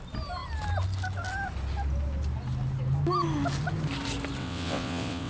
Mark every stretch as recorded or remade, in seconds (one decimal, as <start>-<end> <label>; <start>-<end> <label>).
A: 0.0-4.4 recorded; 4.4-5.3 remade